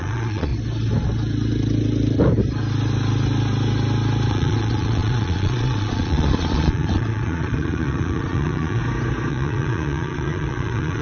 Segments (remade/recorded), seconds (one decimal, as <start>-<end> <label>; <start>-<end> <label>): 0.0-0.5 remade; 0.5-4.3 recorded; 4.3-8.8 remade; 8.8-9.3 recorded; 9.3-11.0 remade